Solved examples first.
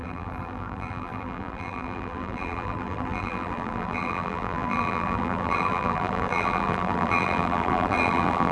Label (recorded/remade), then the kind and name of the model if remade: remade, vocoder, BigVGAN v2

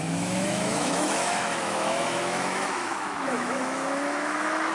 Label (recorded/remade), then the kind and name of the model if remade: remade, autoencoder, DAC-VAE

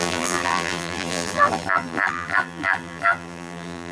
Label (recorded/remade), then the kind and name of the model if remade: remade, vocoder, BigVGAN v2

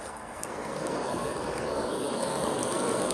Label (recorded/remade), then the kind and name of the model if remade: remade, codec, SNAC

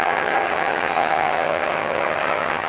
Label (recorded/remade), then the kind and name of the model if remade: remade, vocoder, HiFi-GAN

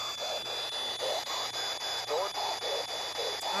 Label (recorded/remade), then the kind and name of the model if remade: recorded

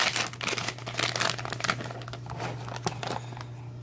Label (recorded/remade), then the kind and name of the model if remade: recorded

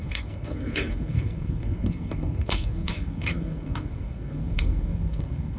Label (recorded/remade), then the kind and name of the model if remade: remade, codec, SNAC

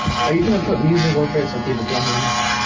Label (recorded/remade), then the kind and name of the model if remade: recorded